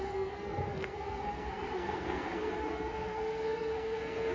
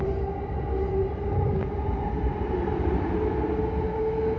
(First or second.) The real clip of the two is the second